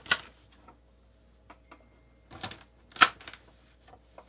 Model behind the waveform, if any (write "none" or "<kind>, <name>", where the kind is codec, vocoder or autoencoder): none